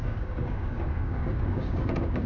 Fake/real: fake